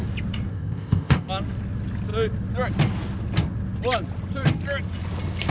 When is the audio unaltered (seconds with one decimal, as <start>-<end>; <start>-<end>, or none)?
0.0-0.5; 1.3-5.5